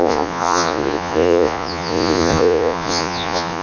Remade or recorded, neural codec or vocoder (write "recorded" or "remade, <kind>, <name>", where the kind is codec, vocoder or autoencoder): remade, vocoder, Vocos